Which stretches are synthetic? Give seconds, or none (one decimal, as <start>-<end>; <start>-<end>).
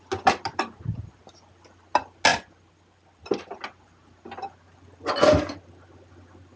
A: none